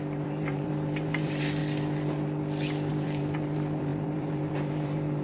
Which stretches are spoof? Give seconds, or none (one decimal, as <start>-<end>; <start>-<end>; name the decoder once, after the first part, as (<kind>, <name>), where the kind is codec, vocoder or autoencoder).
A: 0.0-1.6 (vocoder, BigVGAN v2); 2.9-5.2